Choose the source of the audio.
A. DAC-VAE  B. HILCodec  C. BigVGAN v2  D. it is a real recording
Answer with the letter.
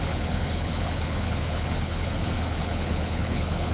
B